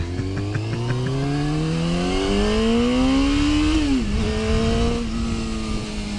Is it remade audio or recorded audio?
recorded